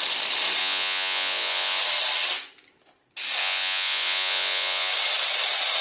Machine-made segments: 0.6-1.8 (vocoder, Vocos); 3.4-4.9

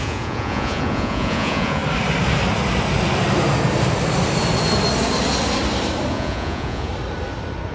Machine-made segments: 0.0-1.8 (vocoder, Vocos); 6.1-6.9

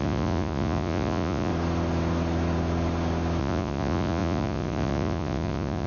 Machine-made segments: 0.0-1.5 (vocoder, Vocos); 3.4-5.9

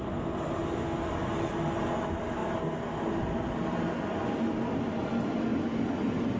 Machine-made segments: none